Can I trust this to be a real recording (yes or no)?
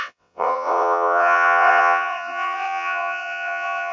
no